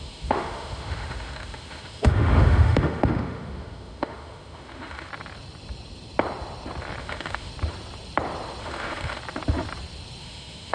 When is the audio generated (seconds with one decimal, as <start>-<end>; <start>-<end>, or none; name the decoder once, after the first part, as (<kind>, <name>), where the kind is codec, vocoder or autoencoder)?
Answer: 0.0-5.1 (autoencoder, DAC-VAE); 7.0-7.5; 8.6-9.2; 10.2-10.7